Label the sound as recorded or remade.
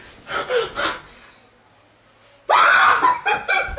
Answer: recorded